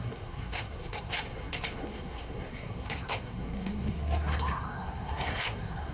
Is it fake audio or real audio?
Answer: fake